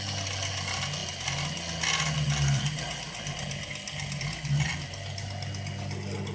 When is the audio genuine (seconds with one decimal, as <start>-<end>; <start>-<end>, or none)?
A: 0.0-6.3